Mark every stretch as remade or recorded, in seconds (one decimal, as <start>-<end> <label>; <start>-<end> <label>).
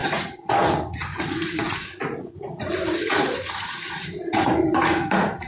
0.0-5.5 remade